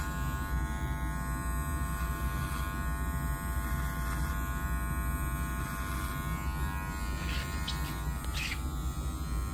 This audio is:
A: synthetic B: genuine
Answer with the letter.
B